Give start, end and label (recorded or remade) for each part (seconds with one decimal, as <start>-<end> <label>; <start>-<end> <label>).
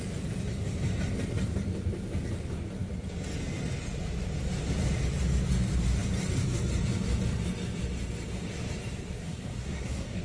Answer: 0.0-9.2 recorded; 9.2-10.2 remade